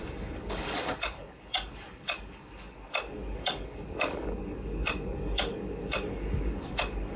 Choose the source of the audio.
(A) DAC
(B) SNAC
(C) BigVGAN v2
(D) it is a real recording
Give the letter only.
A